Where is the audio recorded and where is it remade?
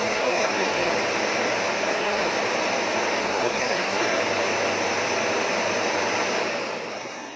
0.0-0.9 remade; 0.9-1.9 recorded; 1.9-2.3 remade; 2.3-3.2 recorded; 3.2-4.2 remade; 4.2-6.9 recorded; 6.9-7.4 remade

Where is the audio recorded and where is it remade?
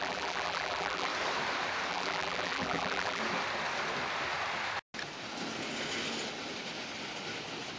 0.0-1.1 remade; 1.1-1.9 recorded; 1.9-3.2 remade; 3.2-7.8 recorded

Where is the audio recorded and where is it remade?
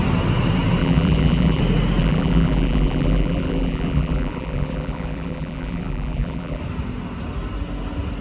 0.0-0.8 recorded; 0.8-1.6 remade; 1.6-2.0 recorded; 2.0-6.6 remade; 6.6-8.2 recorded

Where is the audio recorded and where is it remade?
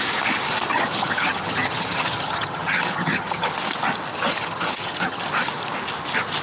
0.0-0.7 recorded; 0.7-3.5 remade; 3.5-4.1 recorded; 4.1-5.2 remade; 5.2-6.4 recorded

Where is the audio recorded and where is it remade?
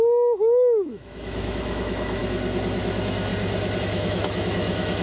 0.0-2.2 remade; 2.2-2.8 recorded; 2.8-3.3 remade; 3.3-3.8 recorded; 3.8-5.0 remade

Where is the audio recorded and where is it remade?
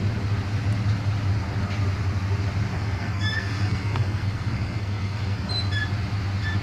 0.0-2.7 recorded; 2.7-5.5 remade; 5.5-6.6 recorded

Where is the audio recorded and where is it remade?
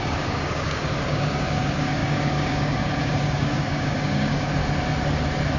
0.0-4.6 remade; 4.6-5.6 recorded